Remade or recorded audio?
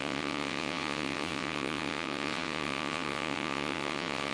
remade